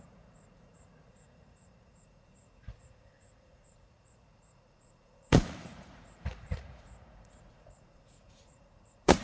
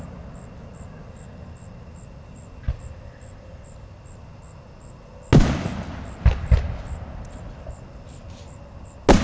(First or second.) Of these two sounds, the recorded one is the second